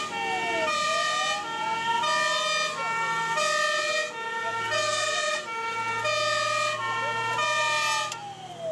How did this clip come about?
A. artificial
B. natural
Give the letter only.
B